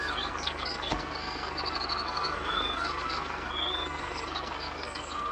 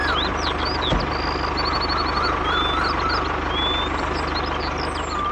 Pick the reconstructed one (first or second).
first